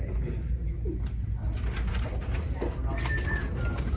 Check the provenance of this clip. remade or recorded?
recorded